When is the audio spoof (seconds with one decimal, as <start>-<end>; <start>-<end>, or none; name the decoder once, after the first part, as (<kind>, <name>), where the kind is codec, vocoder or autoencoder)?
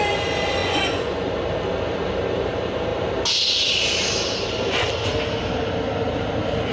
0.6-1.3 (vocoder, Vocos)